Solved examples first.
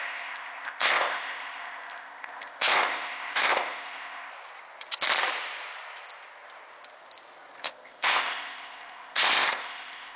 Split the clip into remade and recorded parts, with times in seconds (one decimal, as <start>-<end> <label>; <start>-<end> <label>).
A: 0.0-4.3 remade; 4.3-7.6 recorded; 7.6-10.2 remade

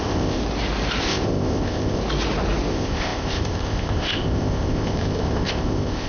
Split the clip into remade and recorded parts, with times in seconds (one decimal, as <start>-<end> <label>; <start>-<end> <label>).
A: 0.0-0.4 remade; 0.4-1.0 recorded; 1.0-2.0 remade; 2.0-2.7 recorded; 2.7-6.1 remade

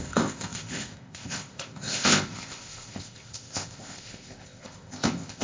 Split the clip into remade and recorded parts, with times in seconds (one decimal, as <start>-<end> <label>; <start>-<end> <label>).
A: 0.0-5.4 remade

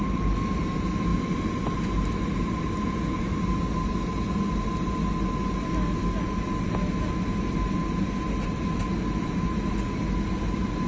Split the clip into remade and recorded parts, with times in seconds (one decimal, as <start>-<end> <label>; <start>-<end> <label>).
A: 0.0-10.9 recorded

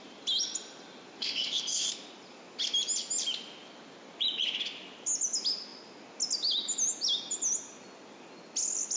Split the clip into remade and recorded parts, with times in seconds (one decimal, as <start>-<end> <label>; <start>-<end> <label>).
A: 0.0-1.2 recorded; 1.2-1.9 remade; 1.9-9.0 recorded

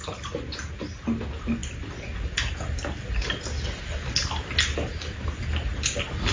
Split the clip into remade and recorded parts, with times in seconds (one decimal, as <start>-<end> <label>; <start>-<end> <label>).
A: 0.0-6.3 recorded